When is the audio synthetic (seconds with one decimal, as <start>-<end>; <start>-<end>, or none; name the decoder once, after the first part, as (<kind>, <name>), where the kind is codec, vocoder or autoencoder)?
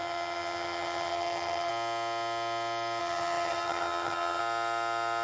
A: 0.0-1.7 (vocoder, HiFi-GAN); 3.0-4.4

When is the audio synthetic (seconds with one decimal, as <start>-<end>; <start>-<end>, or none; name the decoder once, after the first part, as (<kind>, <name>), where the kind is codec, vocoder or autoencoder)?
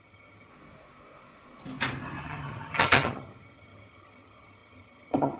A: 0.0-0.5 (vocoder, HiFi-GAN); 2.2-5.4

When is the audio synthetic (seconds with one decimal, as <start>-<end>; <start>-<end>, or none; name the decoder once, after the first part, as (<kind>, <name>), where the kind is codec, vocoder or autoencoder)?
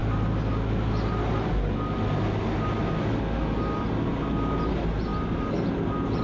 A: none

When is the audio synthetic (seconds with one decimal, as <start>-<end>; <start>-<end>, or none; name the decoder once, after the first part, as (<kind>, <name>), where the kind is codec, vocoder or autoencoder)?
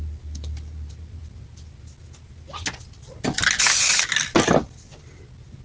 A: none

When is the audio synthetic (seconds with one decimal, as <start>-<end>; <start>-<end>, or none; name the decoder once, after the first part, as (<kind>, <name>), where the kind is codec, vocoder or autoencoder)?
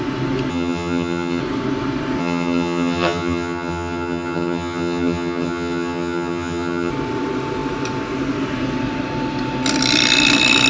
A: 0.5-1.4 (vocoder, HiFi-GAN); 2.2-6.9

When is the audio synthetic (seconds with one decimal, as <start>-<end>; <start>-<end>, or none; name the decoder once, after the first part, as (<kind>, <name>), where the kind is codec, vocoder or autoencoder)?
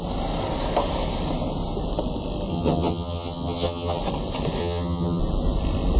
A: 2.5-4.0 (vocoder, HiFi-GAN); 4.6-5.2